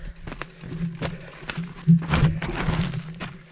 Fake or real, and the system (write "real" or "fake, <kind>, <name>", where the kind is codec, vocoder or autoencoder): real